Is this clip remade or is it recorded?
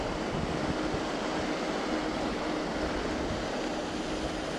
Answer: recorded